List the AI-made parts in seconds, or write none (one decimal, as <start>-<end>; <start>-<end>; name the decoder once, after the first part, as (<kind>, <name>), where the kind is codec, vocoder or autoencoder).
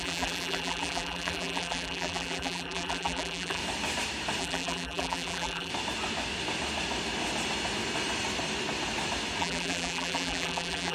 0.0-3.6 (vocoder, BigVGAN v2); 4.4-5.7; 9.4-10.9